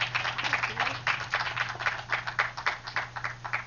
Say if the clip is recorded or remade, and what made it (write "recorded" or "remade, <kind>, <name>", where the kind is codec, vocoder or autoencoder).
recorded